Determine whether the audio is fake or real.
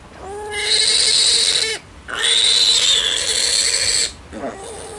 real